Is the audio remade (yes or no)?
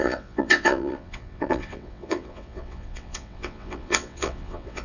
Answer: yes